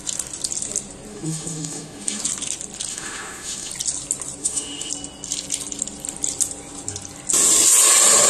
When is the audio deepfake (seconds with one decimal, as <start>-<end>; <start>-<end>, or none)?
1.1-2.2; 2.9-3.7; 4.4-4.9